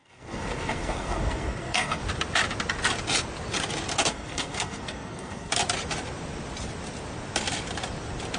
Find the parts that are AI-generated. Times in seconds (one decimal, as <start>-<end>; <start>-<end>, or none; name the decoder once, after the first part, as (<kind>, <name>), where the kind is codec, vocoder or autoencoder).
0.0-2.0 (codec, SNAC); 4.1-5.5